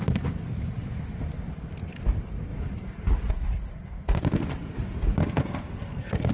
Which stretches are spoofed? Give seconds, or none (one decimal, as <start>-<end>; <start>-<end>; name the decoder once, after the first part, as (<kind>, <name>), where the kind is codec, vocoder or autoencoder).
5.2-6.3 (codec, SNAC)